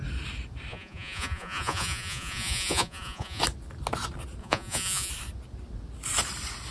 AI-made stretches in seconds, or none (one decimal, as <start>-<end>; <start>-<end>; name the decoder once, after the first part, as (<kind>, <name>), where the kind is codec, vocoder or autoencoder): 0.7-3.4 (vocoder, Vocos); 4.4-5.1